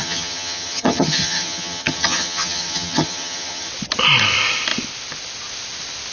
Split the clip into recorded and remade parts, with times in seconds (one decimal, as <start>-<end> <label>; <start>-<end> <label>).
0.0-3.7 remade; 3.7-6.1 recorded